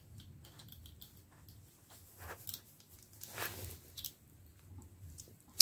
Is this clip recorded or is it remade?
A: recorded